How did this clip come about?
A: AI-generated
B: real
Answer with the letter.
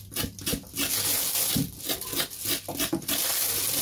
B